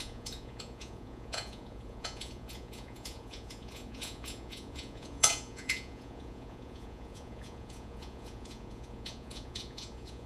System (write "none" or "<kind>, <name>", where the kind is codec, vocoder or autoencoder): vocoder, Vocos